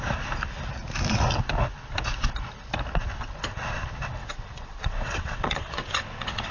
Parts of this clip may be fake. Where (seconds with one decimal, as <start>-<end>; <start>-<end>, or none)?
4.2-6.5